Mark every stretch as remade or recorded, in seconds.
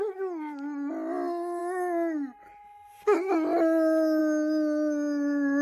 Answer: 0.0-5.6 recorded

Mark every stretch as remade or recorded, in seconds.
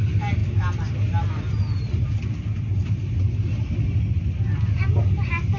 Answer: 0.0-5.6 recorded